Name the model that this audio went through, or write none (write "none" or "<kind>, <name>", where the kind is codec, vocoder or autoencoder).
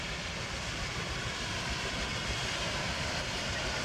none